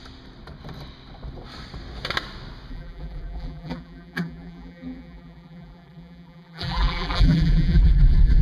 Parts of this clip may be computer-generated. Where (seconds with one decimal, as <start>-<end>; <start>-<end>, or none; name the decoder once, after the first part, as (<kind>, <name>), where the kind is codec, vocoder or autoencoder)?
2.7-8.4 (vocoder, BigVGAN v2)